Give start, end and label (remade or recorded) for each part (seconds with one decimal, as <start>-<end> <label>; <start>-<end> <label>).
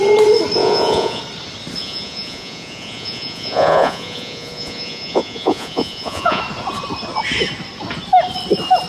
0.0-0.6 recorded; 0.6-1.2 remade; 1.2-1.8 recorded; 1.8-6.4 remade; 6.4-8.9 recorded